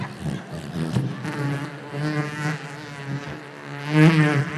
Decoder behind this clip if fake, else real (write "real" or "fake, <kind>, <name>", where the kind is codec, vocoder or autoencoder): real